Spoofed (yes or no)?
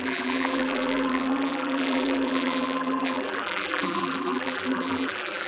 yes